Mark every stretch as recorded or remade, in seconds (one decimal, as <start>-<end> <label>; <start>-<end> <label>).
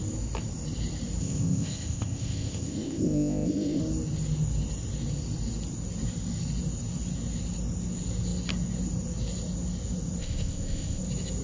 0.0-1.2 recorded; 1.2-3.8 remade; 3.8-10.2 recorded; 10.2-11.0 remade; 11.0-11.4 recorded